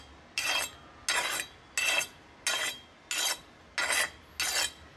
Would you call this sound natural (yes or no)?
yes